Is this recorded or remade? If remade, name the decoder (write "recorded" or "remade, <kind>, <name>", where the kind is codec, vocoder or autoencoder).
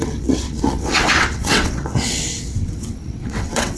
remade, vocoder, WaveNeXt